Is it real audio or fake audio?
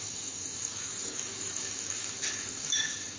fake